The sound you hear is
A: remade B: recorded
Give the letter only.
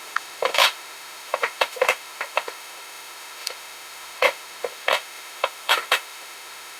A